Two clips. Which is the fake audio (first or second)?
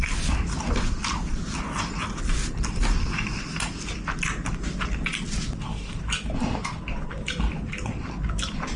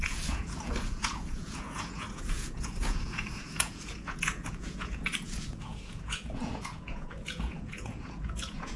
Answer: second